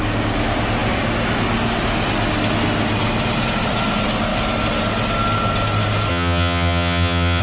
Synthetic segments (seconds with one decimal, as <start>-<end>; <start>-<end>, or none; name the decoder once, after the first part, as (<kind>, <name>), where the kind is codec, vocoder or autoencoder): 6.1-7.4 (vocoder, HiFi-GAN)